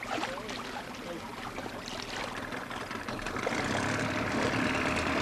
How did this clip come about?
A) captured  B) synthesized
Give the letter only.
A